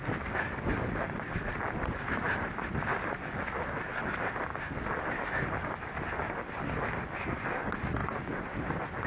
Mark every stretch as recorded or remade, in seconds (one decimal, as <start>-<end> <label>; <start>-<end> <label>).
0.0-8.0 recorded; 8.0-8.7 remade; 8.7-9.1 recorded

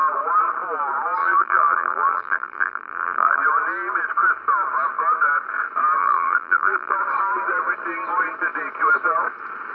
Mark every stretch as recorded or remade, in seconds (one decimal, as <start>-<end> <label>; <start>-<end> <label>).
0.0-1.2 recorded; 1.2-3.4 remade; 3.4-6.0 recorded; 6.0-7.0 remade; 7.0-9.7 recorded